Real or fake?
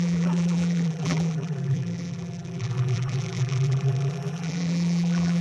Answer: fake